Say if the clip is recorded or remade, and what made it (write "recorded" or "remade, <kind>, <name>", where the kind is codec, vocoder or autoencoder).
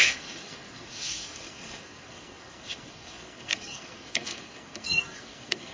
remade, codec, SNAC